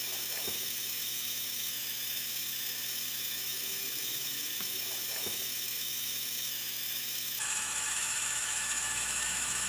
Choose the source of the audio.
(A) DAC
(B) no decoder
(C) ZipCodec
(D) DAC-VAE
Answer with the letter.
D